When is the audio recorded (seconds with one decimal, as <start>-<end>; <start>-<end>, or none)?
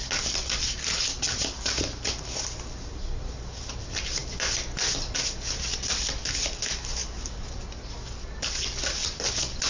0.0-9.7